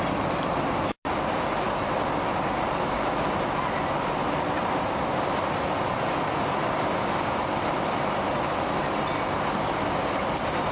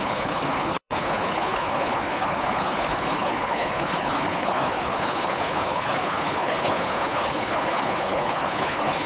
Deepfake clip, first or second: second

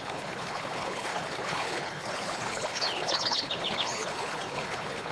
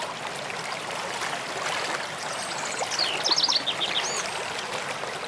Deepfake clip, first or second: first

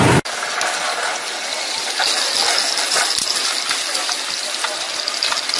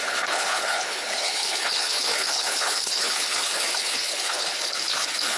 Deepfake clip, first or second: second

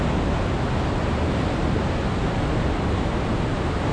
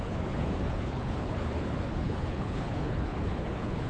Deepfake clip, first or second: second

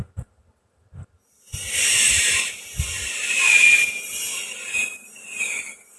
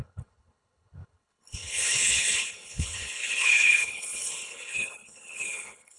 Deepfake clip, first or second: second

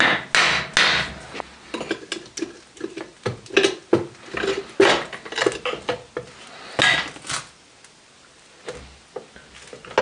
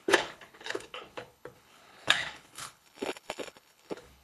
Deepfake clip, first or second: second